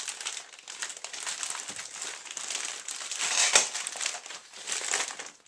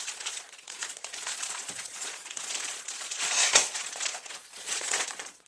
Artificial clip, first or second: second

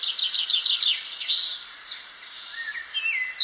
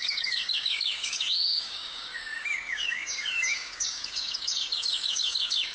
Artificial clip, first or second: second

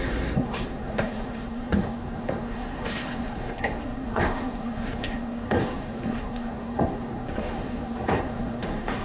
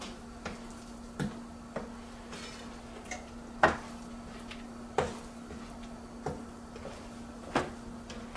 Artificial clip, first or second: first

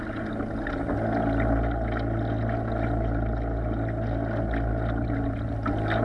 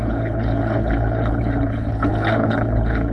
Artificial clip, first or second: second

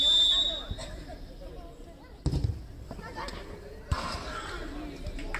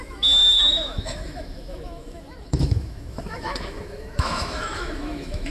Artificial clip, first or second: second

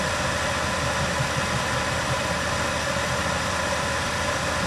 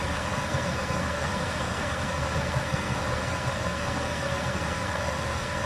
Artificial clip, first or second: second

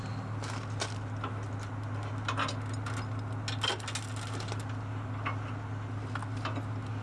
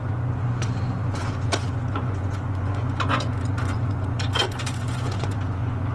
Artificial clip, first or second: second